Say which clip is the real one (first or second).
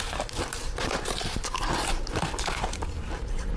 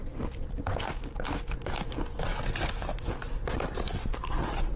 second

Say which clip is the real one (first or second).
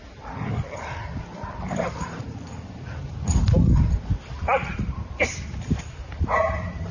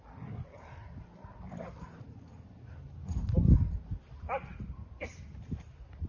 second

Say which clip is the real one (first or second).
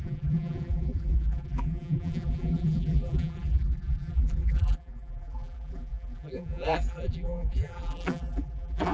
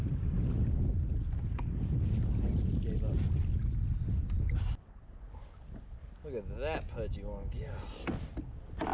second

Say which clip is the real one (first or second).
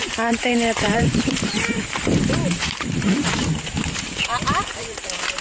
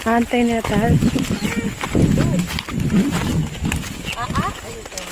second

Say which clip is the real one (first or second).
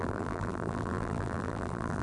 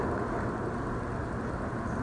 second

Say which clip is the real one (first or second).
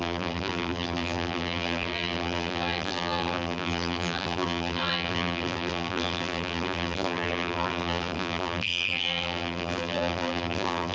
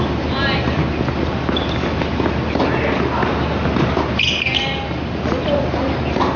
second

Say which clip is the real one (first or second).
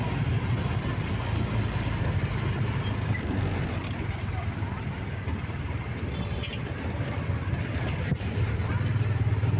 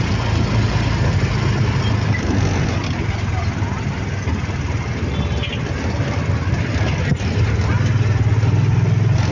second